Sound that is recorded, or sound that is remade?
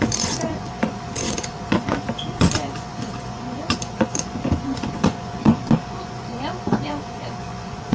remade